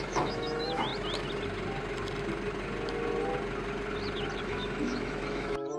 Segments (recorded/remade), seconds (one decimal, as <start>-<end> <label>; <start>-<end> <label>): 0.0-0.9 remade; 0.9-4.4 recorded; 4.4-5.8 remade